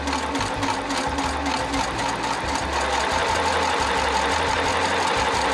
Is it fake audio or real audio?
real